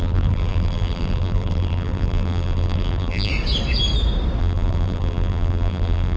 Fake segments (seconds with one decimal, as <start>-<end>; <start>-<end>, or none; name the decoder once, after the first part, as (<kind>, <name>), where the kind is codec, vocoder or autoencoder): 0.0-3.3 (vocoder, BigVGAN v2); 4.4-6.2